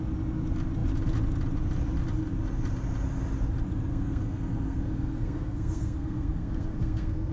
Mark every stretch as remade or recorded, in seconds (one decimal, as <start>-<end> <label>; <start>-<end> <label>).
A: 0.0-3.9 recorded; 3.9-7.3 remade